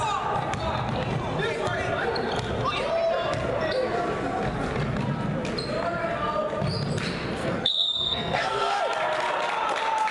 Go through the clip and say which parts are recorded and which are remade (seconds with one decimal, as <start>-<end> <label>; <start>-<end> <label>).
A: 0.0-7.4 recorded; 7.4-8.8 remade; 8.8-10.1 recorded